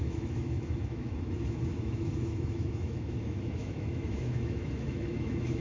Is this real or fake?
fake